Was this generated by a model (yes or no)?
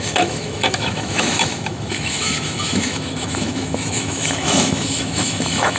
yes